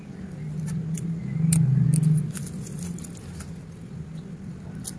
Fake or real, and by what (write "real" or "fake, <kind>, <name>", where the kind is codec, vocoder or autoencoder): real